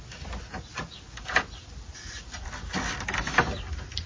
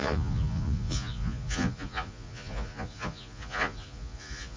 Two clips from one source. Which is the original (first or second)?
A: first